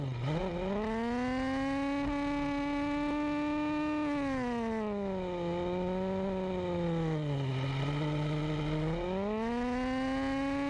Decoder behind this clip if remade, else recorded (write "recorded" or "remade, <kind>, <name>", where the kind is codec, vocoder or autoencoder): recorded